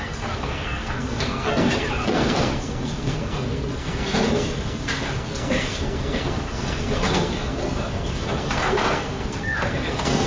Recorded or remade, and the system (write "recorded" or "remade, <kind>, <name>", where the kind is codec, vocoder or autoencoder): remade, codec, SNAC